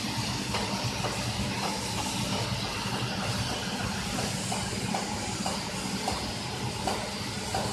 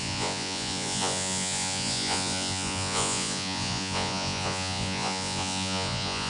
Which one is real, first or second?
first